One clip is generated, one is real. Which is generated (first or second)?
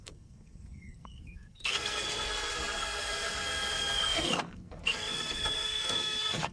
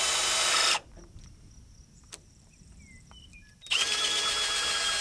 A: first